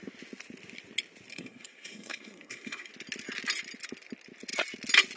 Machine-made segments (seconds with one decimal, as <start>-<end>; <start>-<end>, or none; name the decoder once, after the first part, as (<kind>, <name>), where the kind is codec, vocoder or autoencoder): 1.3-2.9 (codec, SNAC)